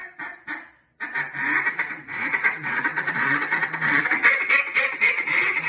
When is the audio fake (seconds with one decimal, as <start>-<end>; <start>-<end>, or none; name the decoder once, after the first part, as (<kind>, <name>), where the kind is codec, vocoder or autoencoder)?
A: 1.7-5.7 (vocoder, WaveNeXt)